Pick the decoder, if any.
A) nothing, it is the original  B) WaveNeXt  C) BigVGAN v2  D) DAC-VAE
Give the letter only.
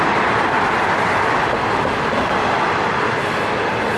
A